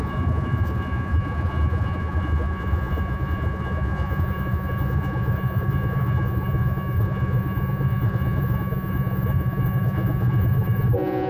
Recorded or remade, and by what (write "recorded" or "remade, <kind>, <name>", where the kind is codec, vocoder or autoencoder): remade, vocoder, Vocos